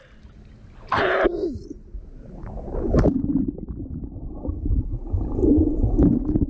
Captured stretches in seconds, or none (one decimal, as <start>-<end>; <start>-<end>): 0.0-6.5